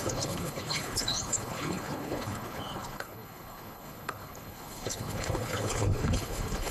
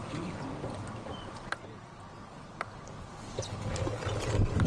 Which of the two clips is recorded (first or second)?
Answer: second